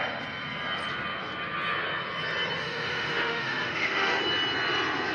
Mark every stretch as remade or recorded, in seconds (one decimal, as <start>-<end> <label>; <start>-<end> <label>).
0.0-2.6 recorded; 2.6-4.2 remade; 4.2-5.1 recorded